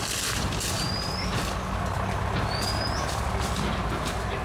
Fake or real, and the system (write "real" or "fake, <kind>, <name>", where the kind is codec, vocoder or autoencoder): real